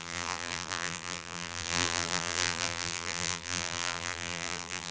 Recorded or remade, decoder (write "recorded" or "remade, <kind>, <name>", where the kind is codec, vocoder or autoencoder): remade, vocoder, BigVGAN v2